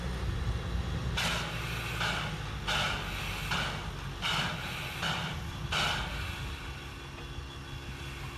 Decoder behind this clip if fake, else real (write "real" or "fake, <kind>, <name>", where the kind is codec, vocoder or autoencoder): real